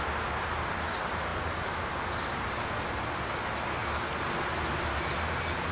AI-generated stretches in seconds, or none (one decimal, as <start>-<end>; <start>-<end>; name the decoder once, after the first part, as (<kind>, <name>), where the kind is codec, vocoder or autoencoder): none

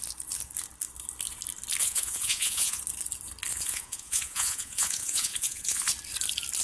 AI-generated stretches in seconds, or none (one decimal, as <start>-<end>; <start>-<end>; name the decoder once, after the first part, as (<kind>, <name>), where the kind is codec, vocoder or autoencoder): 1.8-2.8 (vocoder, Vocos); 3.5-5.9